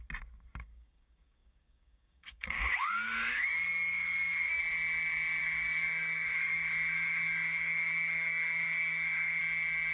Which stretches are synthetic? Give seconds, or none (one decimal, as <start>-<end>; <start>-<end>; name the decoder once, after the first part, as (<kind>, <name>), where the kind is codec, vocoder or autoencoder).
0.7-4.6 (codec, DAC); 5.4-9.4